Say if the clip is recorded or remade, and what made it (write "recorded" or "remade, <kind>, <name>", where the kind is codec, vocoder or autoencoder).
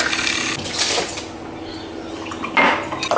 recorded